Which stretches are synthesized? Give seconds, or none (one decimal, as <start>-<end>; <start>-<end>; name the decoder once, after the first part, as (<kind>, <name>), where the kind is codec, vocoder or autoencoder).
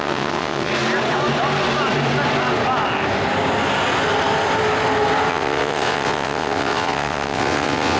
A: 0.0-0.7 (vocoder, WaveNeXt); 5.3-8.0